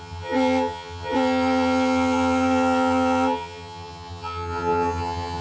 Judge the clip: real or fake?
fake